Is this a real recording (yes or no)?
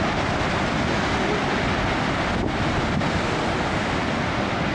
yes